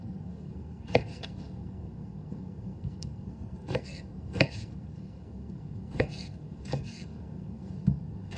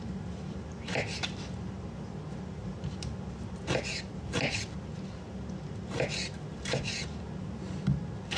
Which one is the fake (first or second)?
first